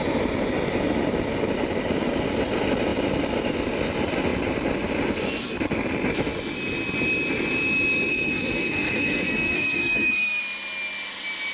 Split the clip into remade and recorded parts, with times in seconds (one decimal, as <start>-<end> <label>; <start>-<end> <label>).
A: 0.0-8.1 recorded; 8.1-10.4 remade; 10.4-11.5 recorded